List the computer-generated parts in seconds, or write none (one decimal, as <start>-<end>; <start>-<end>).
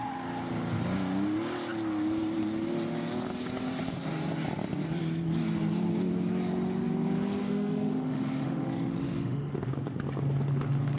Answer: 7.4-9.7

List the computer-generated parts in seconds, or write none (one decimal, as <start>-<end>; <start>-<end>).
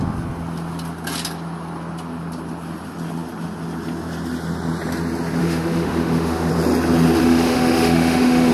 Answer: 5.4-6.5; 7.2-8.5